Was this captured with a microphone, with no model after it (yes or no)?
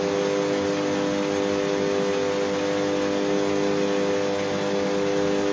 yes